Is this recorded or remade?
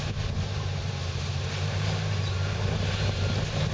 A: remade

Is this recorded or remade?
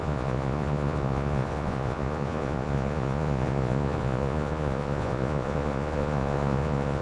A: remade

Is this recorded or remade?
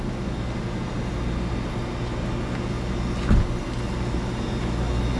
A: recorded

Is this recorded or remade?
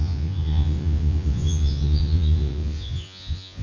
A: remade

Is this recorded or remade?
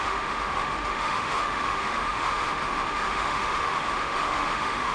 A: remade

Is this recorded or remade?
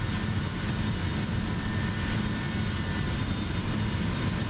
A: recorded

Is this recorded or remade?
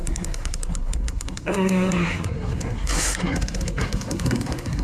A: remade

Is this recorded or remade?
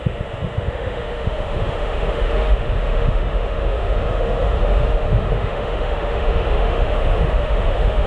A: remade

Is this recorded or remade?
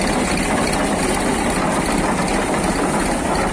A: recorded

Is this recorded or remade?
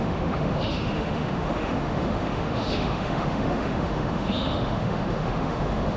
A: remade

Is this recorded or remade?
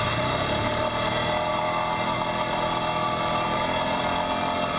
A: recorded